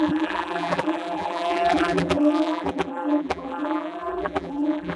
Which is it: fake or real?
fake